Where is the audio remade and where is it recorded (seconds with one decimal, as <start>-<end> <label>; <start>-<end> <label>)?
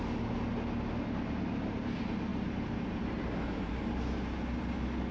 0.0-2.3 recorded; 2.3-3.7 remade; 3.7-5.1 recorded